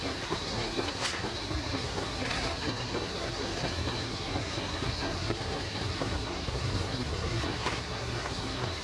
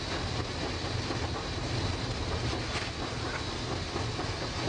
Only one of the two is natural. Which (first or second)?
second